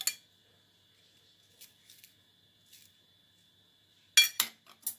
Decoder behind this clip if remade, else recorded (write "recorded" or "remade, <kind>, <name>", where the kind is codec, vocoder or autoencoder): recorded